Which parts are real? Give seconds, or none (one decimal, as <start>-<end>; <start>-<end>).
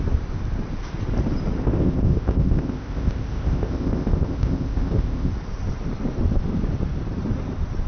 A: 0.0-1.6; 5.3-7.9